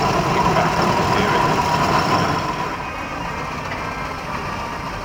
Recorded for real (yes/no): yes